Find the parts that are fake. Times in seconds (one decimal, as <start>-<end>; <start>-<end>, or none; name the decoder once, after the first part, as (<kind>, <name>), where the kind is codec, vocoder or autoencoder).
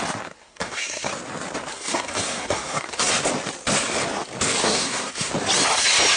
0.4-1.1 (codec, SNAC); 1.7-3.1; 4.6-5.3